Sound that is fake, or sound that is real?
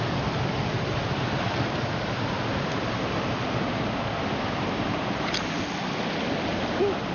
real